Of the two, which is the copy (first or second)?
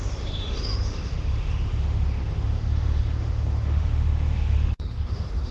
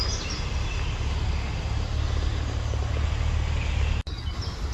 first